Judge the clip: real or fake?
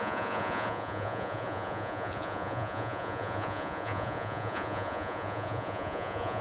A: fake